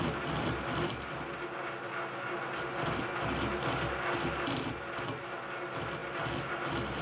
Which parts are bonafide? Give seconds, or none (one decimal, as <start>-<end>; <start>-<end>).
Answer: 0.0-7.0